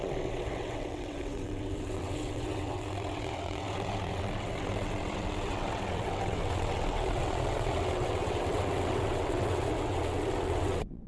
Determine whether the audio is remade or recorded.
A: remade